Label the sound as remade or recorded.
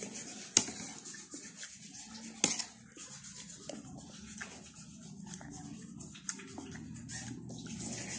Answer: recorded